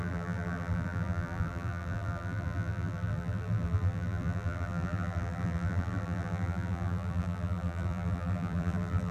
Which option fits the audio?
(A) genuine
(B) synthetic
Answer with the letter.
B